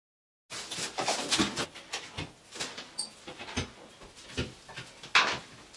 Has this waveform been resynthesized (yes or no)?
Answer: no